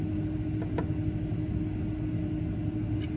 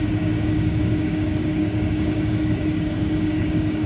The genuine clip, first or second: first